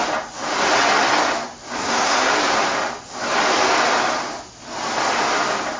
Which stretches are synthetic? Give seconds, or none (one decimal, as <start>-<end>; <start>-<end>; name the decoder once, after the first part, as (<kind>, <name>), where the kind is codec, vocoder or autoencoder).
1.8-2.3 (codec, SNAC)

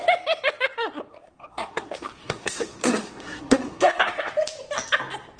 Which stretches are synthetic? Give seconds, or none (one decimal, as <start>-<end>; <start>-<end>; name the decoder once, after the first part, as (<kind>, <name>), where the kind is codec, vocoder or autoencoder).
1.1-4.3 (codec, SNAC)

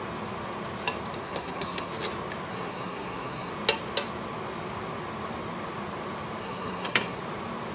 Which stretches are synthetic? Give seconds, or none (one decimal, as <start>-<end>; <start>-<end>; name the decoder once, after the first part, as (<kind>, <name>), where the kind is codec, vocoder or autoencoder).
1.2-1.9 (codec, SNAC); 2.5-3.5; 6.4-7.2